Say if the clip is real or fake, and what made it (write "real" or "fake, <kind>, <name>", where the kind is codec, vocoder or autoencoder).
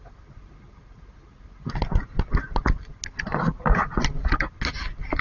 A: real